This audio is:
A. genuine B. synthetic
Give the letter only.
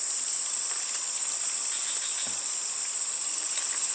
A